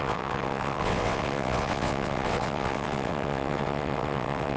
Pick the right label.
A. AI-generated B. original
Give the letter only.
A